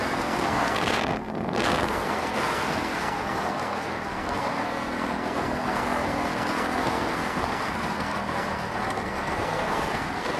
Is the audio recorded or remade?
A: remade